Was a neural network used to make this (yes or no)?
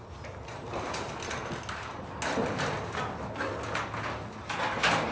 no